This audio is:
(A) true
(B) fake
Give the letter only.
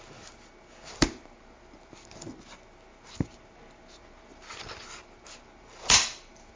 A